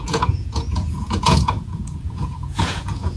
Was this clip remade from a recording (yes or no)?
yes